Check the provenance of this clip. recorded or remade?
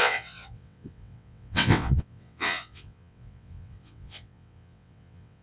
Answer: remade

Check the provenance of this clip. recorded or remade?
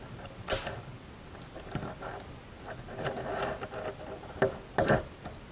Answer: recorded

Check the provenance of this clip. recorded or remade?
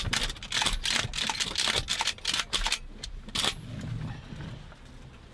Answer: recorded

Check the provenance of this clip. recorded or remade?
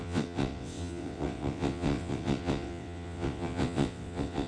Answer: remade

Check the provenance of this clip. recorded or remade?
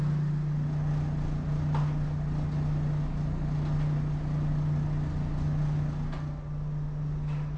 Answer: recorded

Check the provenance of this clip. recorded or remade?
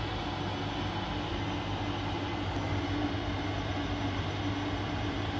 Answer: recorded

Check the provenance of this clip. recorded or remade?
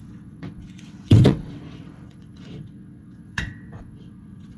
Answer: remade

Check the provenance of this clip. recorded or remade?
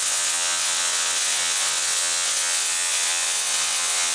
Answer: remade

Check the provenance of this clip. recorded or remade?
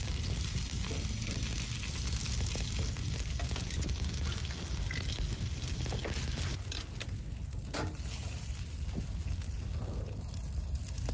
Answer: recorded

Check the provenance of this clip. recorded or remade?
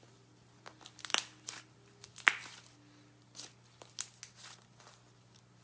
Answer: recorded